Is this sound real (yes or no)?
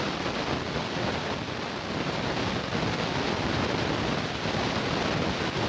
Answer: yes